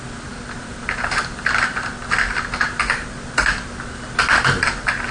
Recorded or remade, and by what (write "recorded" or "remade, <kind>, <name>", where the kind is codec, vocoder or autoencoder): recorded